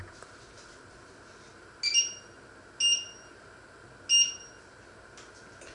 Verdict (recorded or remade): recorded